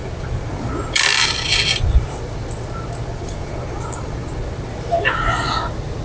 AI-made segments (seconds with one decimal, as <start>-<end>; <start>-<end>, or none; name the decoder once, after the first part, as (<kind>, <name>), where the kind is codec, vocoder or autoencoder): 0.0-0.8 (vocoder, Vocos); 3.1-4.3